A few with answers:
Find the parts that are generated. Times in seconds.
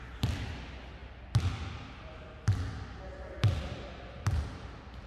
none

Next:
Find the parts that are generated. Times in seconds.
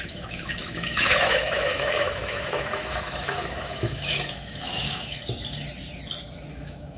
0.0-5.2 (autoencoder, DAC-VAE); 6.5-7.0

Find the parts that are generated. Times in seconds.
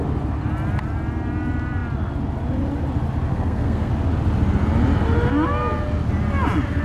3.3-3.9 (codec, SNAC)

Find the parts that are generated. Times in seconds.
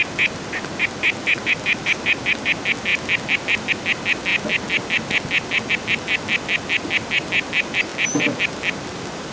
7.9-8.4 (vocoder, BigVGAN v2)